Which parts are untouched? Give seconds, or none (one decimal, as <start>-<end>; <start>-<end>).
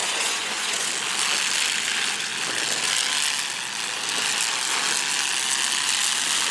0.9-6.5